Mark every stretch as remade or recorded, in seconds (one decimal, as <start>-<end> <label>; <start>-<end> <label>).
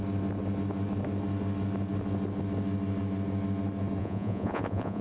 0.0-4.0 recorded; 4.0-5.0 remade